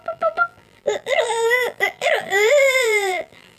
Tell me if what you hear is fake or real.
fake